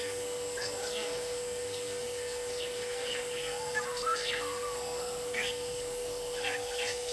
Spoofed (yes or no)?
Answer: yes